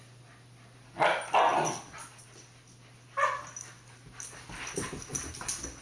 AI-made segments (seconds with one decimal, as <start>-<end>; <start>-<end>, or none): none